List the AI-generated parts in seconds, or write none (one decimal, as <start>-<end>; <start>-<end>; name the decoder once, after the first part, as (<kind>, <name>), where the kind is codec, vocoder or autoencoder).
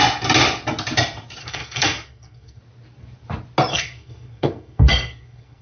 1.4-2.6 (codec, SNAC); 3.7-5.6